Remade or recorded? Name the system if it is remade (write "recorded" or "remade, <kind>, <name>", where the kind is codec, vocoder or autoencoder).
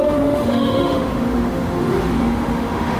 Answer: remade, autoencoder, DAC-VAE